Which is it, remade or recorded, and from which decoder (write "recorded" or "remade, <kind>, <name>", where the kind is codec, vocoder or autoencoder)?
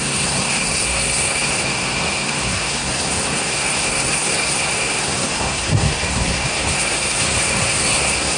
remade, codec, SNAC